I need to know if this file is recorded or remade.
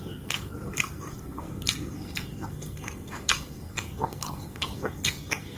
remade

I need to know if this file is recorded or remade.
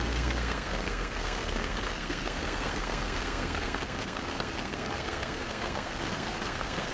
remade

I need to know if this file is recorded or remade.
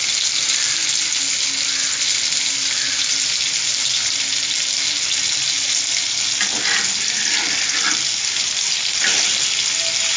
recorded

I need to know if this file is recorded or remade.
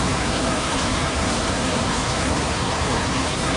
remade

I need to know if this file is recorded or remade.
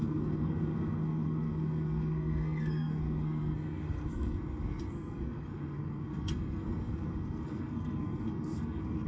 remade